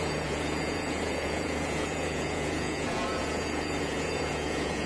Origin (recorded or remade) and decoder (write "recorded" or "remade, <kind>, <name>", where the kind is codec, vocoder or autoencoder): remade, vocoder, Vocos